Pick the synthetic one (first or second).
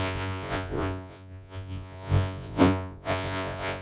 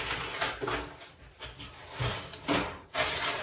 first